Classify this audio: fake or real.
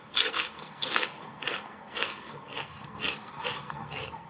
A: fake